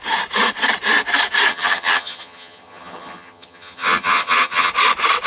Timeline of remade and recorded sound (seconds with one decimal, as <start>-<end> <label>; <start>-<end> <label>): 0.0-1.5 recorded; 1.5-4.7 remade; 4.7-5.3 recorded